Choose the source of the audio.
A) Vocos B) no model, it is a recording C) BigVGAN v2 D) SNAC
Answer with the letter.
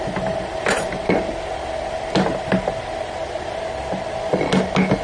B